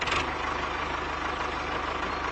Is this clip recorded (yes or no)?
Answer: yes